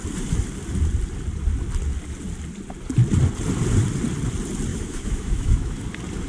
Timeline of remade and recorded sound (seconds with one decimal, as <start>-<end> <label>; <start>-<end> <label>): 0.0-4.7 recorded; 4.7-5.8 remade; 5.8-6.3 recorded